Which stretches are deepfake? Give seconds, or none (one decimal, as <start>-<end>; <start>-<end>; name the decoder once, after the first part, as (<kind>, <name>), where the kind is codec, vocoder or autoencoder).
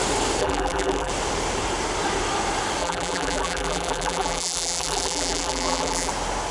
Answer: 0.4-1.1 (vocoder, BigVGAN v2); 2.8-6.1